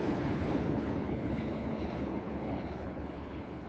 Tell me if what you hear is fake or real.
fake